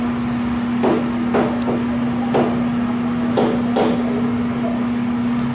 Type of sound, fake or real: real